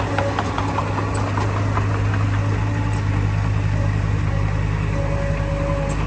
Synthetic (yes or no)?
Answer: no